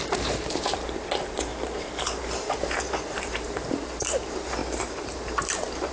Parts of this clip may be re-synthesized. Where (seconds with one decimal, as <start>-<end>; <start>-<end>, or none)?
0.0-5.9